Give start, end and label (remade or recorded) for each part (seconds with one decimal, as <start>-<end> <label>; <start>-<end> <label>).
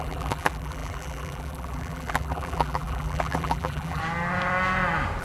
0.0-4.0 remade; 4.0-5.2 recorded